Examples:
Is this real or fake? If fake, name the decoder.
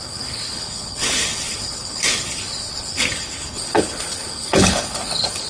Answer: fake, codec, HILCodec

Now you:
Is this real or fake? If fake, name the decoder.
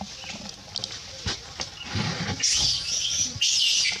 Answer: real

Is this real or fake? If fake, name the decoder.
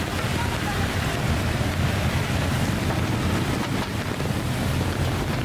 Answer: fake, vocoder, BigVGAN v2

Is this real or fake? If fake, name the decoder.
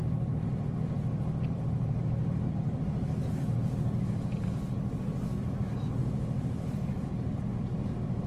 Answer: fake, vocoder, BigVGAN v2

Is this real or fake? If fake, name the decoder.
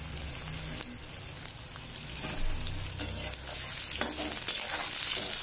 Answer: real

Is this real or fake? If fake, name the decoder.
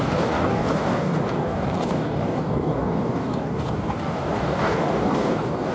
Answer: fake, codec, DAC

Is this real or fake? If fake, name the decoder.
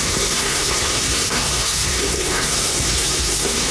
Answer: fake, codec, SNAC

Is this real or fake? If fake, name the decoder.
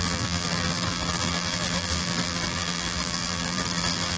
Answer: fake, vocoder, BigVGAN v2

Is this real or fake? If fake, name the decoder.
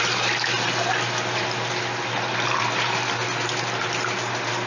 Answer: real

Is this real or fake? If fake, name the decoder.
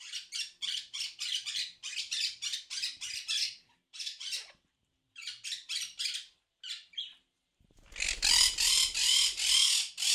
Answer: fake, vocoder, BigVGAN v2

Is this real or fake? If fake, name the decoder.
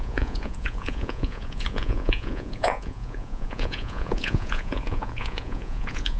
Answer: fake, vocoder, Vocos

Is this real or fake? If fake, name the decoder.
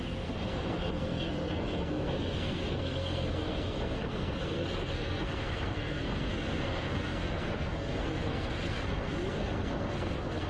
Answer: fake, codec, SNAC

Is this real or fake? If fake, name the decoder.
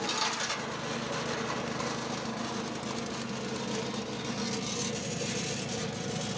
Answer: real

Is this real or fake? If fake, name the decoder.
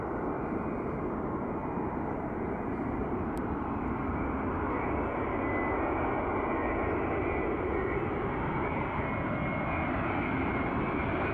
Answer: real